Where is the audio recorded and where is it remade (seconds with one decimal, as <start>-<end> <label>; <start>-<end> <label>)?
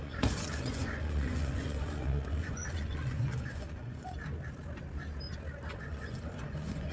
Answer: 0.0-4.2 remade; 4.2-5.7 recorded; 5.7-6.9 remade